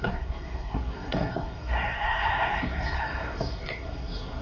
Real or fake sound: fake